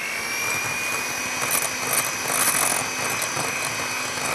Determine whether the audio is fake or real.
real